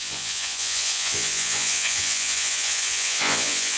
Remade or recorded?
remade